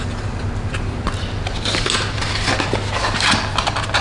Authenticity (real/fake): real